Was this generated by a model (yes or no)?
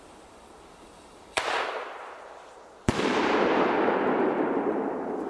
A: yes